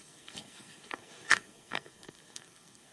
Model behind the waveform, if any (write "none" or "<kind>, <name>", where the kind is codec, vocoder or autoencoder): codec, SNAC